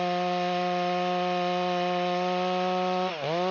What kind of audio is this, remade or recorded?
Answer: recorded